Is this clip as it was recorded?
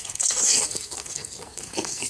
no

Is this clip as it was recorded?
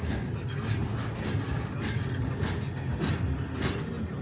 yes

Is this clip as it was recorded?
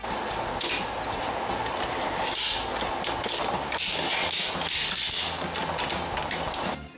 yes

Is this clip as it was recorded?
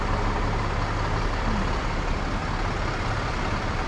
yes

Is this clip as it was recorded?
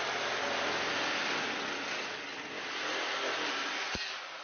yes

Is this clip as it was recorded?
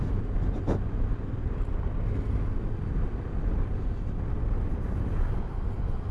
yes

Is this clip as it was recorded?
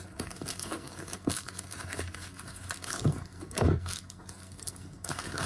no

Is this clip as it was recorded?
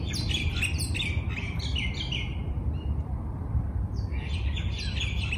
yes